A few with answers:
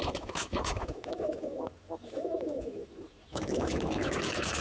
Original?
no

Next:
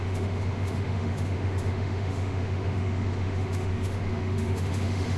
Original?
no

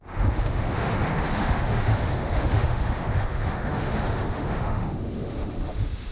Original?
no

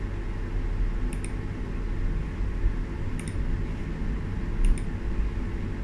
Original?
yes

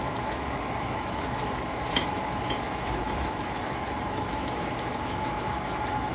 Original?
no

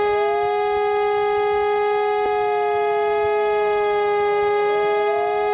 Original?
no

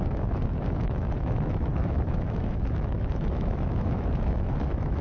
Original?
no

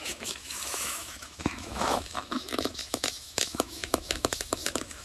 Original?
no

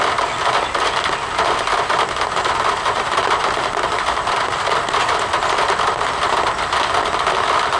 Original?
yes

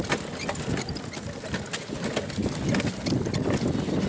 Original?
yes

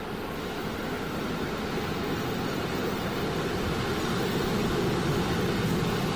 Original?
yes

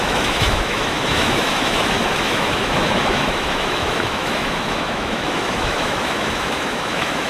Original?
no